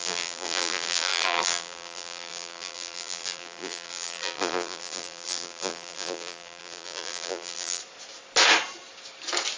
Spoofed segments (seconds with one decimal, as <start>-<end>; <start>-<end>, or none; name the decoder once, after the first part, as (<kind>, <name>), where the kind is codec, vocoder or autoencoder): 0.0-7.8 (vocoder, BigVGAN v2)